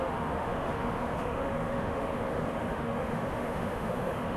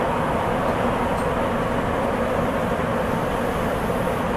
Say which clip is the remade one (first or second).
first